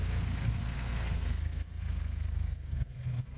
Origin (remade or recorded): remade